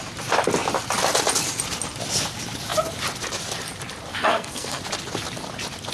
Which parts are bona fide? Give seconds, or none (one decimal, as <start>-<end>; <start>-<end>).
0.0-4.1; 4.8-5.9